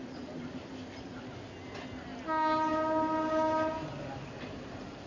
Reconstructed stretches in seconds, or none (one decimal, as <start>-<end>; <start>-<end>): 1.3-2.1; 4.2-5.1